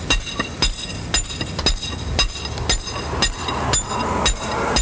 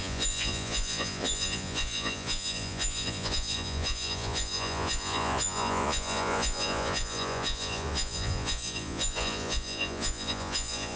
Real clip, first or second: first